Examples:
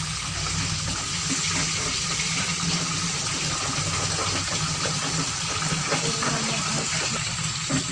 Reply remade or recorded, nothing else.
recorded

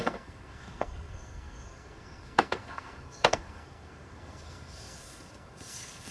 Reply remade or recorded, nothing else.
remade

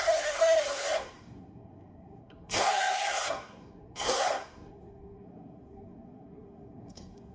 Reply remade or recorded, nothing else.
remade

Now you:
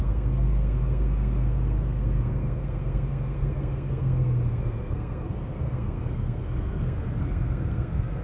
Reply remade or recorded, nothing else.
remade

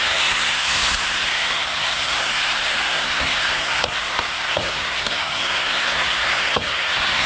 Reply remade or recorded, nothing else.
remade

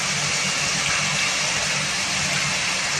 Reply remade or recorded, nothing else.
recorded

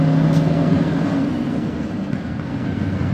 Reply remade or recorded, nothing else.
remade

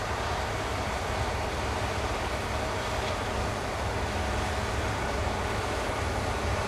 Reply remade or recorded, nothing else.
recorded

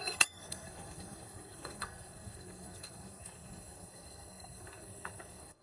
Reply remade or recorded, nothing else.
remade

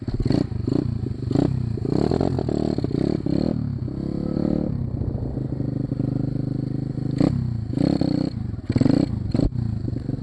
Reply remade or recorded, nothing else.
recorded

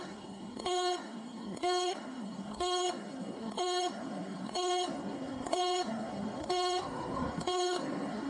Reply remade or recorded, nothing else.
remade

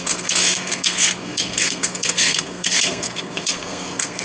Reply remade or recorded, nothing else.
remade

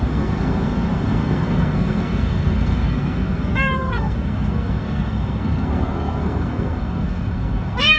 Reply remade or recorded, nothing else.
remade